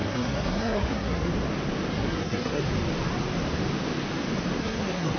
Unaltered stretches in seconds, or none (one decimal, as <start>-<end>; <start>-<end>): 1.3-1.9; 2.6-4.6